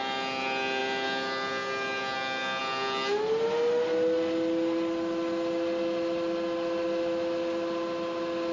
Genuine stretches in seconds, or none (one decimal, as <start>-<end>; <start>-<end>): 0.0-8.5